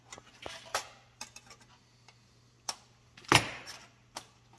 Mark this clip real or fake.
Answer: real